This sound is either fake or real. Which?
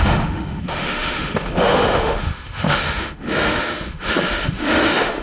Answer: fake